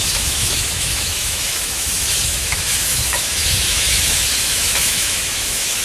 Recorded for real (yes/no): no